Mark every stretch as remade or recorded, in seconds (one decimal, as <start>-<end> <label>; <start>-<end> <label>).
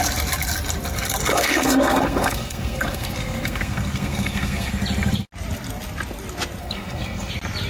0.0-1.3 recorded; 1.3-4.7 remade; 4.7-6.6 recorded; 6.6-7.3 remade; 7.3-7.7 recorded